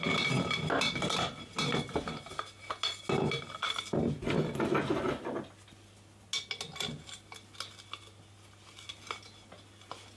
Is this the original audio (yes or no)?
yes